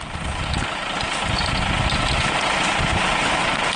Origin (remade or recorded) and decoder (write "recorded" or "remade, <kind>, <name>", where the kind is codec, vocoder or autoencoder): recorded